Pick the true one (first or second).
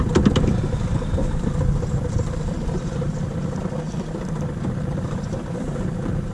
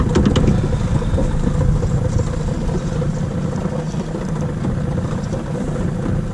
second